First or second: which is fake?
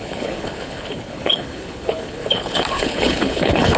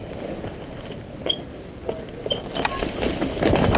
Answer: first